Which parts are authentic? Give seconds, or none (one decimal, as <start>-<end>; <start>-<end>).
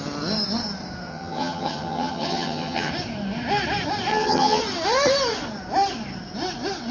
0.0-1.1; 2.9-4.1; 4.6-6.9